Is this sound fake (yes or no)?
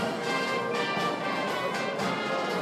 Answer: no